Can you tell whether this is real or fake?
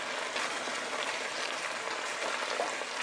real